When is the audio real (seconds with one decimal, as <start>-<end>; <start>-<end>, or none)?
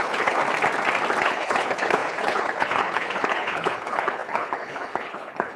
0.4-1.2